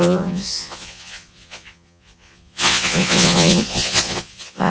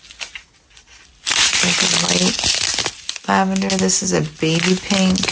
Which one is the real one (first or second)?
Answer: second